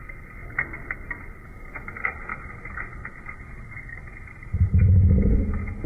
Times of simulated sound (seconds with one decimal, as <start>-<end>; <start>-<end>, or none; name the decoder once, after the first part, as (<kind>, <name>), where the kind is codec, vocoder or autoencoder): none